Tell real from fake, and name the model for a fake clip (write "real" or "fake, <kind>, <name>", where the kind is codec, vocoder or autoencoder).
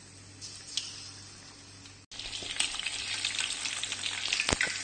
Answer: real